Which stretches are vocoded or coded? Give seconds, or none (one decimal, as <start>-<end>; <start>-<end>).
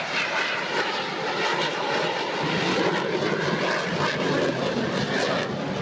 none